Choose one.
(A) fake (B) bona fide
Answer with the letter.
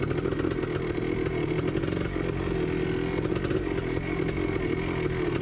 B